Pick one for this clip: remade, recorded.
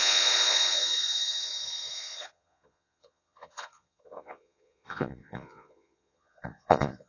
remade